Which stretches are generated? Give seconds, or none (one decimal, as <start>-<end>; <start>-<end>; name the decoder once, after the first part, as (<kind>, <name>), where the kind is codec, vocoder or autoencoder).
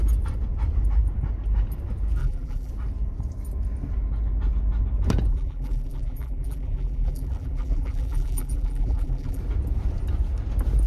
2.2-2.7 (vocoder, BigVGAN v2); 5.3-9.4